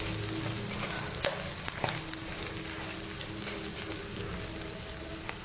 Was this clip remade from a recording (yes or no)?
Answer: no